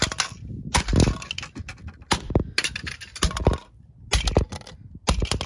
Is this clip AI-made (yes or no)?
no